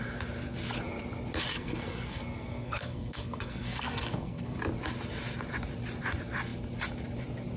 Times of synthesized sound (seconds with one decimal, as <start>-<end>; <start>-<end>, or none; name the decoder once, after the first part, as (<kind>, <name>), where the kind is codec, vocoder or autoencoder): 1.5-4.6 (codec, SNAC)